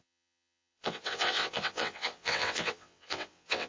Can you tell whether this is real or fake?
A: fake